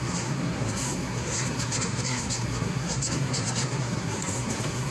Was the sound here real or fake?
fake